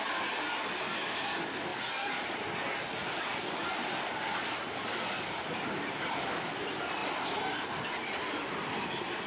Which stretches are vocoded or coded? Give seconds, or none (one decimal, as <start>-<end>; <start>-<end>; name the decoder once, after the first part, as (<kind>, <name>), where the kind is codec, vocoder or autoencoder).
none